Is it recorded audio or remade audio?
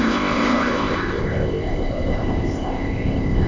remade